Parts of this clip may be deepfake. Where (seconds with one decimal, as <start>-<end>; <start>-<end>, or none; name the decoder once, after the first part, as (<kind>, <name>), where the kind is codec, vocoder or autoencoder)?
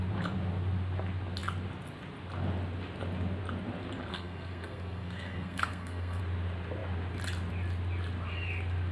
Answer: 4.1-6.2 (codec, SNAC)